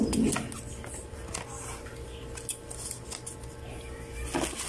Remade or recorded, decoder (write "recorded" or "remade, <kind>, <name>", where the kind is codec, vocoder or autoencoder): recorded